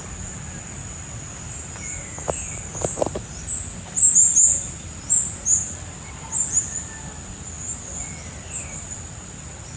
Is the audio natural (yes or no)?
yes